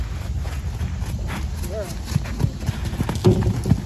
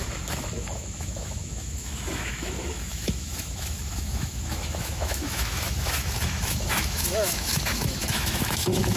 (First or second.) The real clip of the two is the first